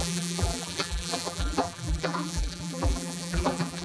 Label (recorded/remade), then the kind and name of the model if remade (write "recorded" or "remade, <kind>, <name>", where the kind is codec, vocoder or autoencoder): remade, vocoder, BigVGAN v2